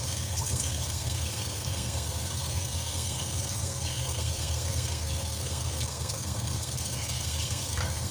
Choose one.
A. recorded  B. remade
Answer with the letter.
B